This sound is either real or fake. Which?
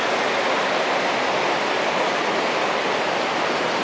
real